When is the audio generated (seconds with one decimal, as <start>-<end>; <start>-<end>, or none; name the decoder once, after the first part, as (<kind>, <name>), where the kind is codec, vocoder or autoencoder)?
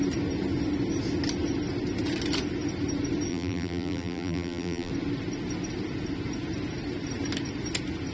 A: 3.3-4.9 (vocoder, BigVGAN v2)